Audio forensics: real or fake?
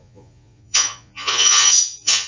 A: fake